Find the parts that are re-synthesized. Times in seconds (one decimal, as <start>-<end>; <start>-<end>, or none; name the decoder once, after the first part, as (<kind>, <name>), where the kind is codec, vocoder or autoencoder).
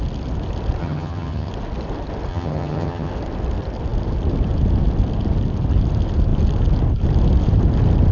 0.8-1.5 (vocoder, HiFi-GAN); 2.3-3.1